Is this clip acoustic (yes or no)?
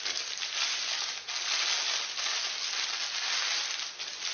yes